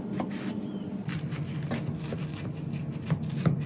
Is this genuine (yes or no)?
yes